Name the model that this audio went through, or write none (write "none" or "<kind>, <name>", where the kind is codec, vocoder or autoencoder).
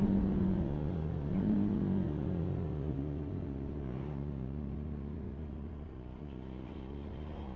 vocoder, Vocos